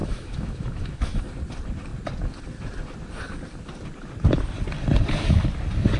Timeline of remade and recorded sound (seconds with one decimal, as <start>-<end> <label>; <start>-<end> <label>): 0.0-1.2 remade; 1.2-6.0 recorded